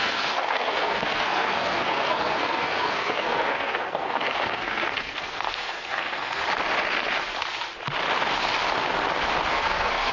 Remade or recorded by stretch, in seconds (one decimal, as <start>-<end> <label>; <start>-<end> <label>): 0.0-6.4 remade; 6.4-9.5 recorded; 9.5-10.1 remade